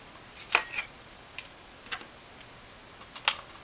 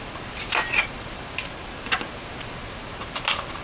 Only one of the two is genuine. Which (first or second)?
first